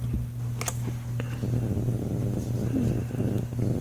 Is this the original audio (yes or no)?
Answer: yes